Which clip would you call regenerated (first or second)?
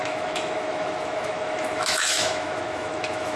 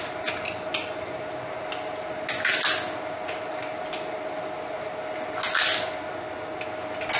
first